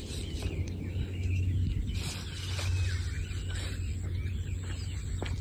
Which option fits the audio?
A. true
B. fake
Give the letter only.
A